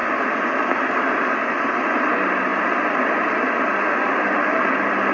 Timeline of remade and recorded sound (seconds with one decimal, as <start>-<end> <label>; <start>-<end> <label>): 0.0-5.1 recorded